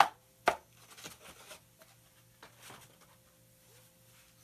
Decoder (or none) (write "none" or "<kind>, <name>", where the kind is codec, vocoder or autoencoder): none